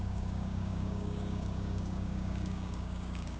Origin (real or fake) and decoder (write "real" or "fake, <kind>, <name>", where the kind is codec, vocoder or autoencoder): fake, codec, DAC